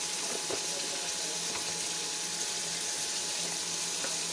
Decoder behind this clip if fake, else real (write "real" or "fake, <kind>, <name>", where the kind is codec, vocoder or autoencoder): real